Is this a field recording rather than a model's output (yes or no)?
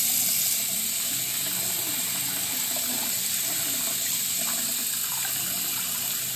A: yes